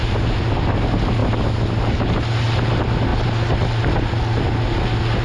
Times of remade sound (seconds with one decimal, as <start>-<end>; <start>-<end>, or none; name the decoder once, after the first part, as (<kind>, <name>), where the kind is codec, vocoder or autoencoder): none